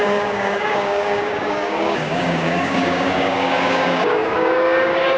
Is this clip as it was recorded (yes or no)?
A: no